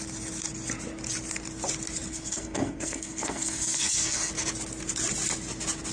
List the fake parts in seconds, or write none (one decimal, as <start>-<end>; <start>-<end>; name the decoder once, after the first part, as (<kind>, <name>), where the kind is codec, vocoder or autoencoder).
2.1-4.3 (codec, SNAC)